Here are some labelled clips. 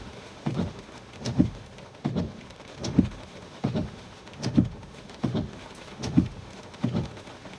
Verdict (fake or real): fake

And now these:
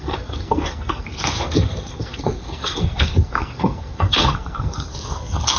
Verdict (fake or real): fake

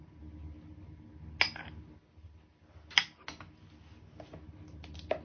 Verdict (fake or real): real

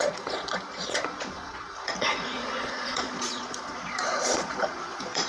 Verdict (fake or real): fake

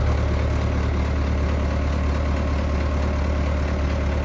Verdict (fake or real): real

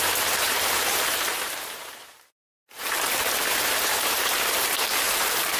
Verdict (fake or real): fake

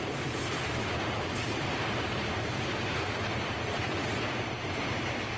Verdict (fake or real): fake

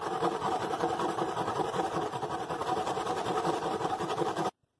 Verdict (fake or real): fake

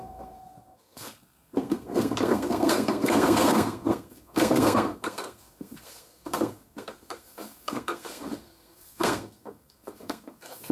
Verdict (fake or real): fake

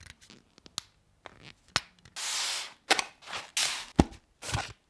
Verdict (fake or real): real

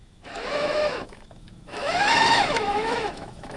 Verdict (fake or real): fake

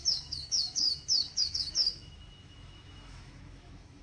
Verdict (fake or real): fake